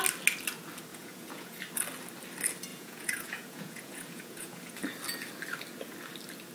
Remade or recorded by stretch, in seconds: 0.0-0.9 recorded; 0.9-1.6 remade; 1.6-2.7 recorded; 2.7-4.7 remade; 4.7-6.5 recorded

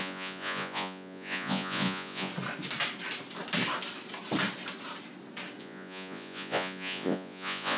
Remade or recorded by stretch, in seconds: 0.0-2.3 remade; 2.3-5.6 recorded; 5.6-7.8 remade

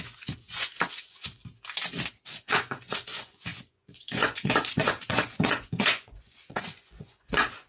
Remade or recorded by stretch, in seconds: 0.0-1.4 remade; 1.4-2.3 recorded; 2.3-7.7 remade

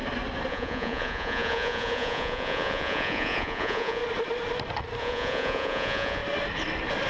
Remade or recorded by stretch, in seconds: 0.0-0.5 recorded; 0.5-4.0 remade; 4.0-5.0 recorded; 5.0-6.2 remade; 6.2-7.1 recorded

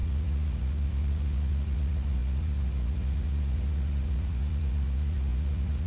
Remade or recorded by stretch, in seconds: 0.0-5.9 remade

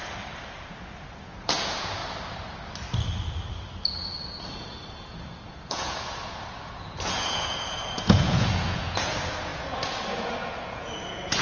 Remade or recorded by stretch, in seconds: 0.0-1.2 recorded; 1.2-2.0 remade; 2.0-4.5 recorded; 4.5-11.4 remade